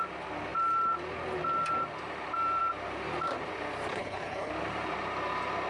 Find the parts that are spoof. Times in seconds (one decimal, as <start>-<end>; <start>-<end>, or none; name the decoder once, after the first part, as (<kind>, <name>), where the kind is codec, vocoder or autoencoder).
3.9-4.5 (codec, HILCodec)